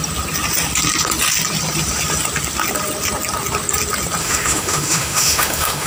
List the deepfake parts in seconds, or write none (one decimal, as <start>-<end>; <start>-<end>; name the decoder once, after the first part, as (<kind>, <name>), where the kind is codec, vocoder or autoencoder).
4.2-5.9 (autoencoder, DAC-VAE)